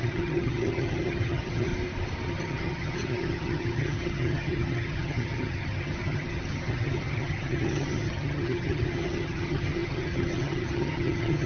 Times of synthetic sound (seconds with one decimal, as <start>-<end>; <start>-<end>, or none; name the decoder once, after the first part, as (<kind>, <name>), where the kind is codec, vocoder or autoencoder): 0.0-1.7 (vocoder, HiFi-GAN); 2.3-11.5